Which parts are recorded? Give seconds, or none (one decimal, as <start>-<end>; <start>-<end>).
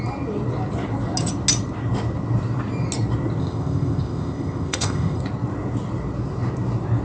0.0-3.4; 5.2-7.0